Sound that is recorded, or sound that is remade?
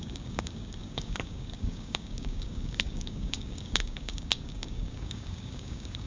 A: remade